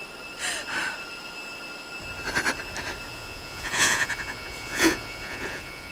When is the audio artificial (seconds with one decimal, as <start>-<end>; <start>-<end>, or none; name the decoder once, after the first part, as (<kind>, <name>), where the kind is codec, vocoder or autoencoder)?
3.1-5.9 (vocoder, Vocos)